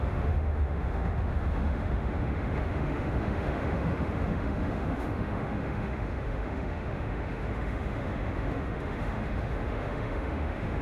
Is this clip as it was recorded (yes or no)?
no